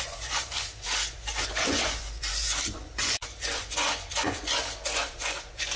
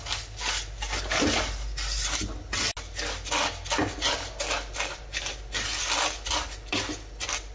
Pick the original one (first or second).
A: second